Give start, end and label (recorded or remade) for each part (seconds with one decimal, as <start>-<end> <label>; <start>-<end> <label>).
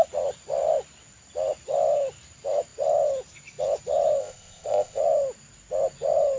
0.0-4.2 recorded; 4.2-5.0 remade; 5.0-6.4 recorded